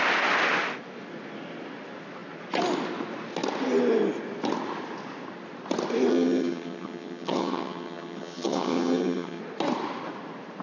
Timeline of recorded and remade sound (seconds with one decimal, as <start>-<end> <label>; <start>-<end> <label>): 0.0-6.1 recorded; 6.1-9.4 remade; 9.4-10.6 recorded